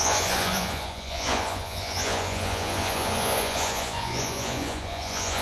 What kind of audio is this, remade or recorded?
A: remade